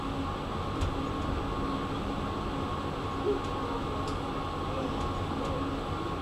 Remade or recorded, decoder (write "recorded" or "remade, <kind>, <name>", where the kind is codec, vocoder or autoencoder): recorded